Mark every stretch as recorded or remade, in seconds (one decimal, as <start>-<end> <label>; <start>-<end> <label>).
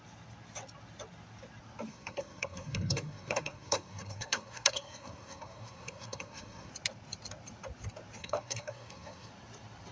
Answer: 0.0-1.9 recorded; 1.9-6.7 remade; 6.7-8.2 recorded; 8.2-9.3 remade; 9.3-9.9 recorded